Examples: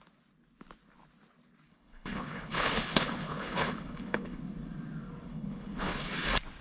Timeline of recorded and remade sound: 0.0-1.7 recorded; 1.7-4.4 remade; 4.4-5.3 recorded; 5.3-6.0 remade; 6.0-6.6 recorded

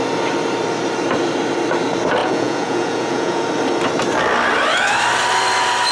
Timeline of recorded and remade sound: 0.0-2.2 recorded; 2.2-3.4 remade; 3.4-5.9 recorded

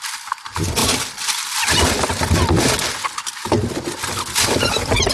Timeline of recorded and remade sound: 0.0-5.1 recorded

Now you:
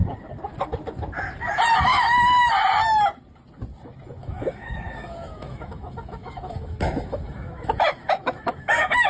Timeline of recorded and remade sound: 0.0-1.9 recorded; 1.9-2.5 remade; 2.5-4.2 recorded; 4.2-9.1 remade

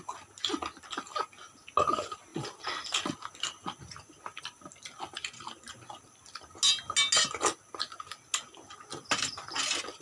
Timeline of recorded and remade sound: 0.0-10.0 recorded

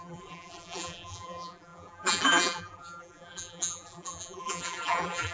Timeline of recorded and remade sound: 0.0-5.3 remade

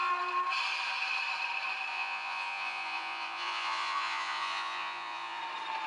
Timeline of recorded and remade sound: 0.0-1.9 recorded; 1.9-5.4 remade; 5.4-5.9 recorded